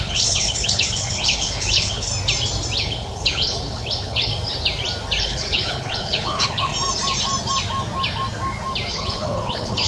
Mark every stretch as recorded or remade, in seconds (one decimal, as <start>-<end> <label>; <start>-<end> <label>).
0.0-2.1 remade; 2.1-2.8 recorded; 2.8-4.3 remade; 4.3-5.2 recorded; 5.2-6.7 remade; 6.7-8.9 recorded; 8.9-9.9 remade